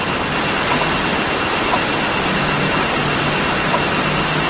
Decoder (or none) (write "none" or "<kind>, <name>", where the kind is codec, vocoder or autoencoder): none